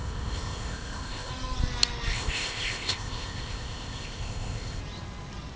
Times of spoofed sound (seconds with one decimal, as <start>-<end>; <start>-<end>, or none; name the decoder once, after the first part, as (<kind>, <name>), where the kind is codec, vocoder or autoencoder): 0.0-1.3 (codec, ZipCodec); 2.1-4.8

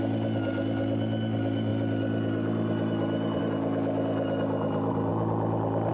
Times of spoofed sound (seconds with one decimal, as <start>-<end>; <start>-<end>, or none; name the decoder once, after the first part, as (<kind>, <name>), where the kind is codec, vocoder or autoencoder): 1.7-3.4 (vocoder, BigVGAN v2); 5.1-5.9

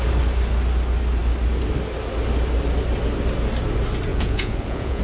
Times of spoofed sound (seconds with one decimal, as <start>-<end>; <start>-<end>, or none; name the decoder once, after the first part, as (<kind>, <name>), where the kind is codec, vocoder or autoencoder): 4.1-5.0 (vocoder, Vocos)

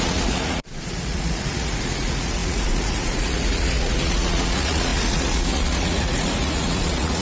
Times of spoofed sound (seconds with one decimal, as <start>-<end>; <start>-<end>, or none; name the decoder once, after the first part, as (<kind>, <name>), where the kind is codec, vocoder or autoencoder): 0.0-7.2 (vocoder, Vocos)

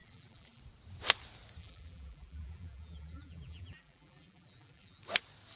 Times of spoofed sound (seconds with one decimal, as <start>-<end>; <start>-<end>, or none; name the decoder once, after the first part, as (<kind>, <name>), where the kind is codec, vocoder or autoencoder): 0.0-0.6 (vocoder, BigVGAN v2); 1.6-5.0

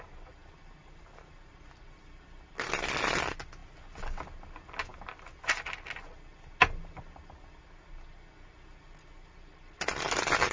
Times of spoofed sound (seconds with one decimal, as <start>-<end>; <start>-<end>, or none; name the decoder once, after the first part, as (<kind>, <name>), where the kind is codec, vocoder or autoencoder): none